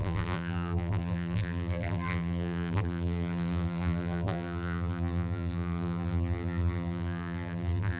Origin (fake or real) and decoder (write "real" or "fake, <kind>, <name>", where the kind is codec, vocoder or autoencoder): fake, vocoder, BigVGAN v2